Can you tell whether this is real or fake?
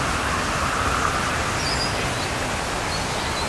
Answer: real